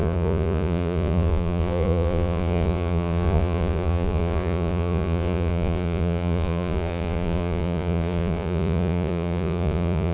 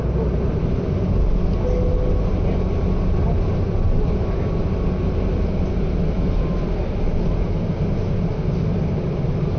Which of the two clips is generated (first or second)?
first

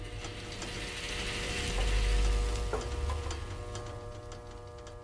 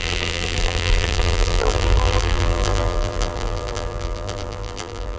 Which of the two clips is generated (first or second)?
second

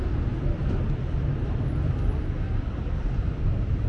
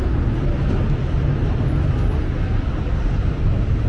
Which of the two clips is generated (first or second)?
first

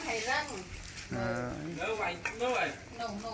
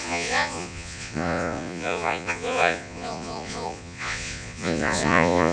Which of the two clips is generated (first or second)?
second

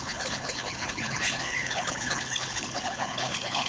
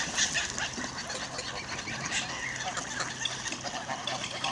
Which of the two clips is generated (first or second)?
first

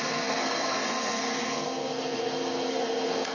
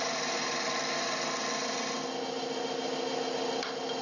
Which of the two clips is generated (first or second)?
first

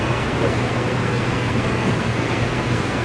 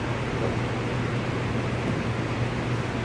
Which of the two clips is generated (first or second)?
first